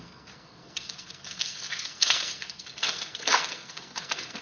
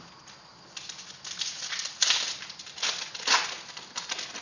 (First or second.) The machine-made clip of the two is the first